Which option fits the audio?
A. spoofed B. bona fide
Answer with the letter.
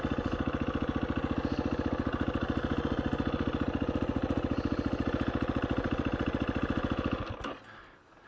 B